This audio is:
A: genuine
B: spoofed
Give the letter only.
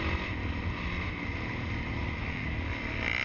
A